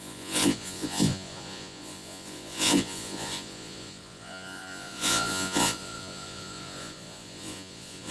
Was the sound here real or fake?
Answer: fake